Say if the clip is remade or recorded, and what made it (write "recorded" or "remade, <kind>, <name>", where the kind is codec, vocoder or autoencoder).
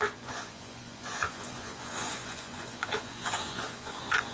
remade, vocoder, Vocos